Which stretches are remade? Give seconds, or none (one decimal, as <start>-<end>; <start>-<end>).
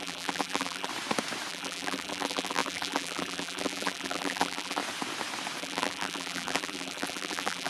0.0-0.9; 1.5-4.8; 5.6-7.7